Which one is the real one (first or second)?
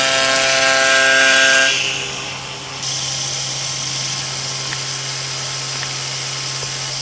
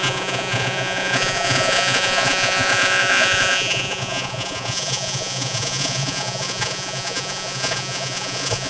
first